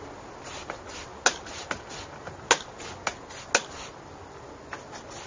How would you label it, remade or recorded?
recorded